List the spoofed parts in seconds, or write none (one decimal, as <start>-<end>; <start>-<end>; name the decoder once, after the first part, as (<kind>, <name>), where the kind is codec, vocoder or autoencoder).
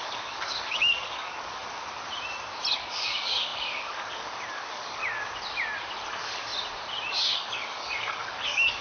0.0-1.6 (codec, DAC); 2.7-5.0; 6.1-6.5; 7.1-8.8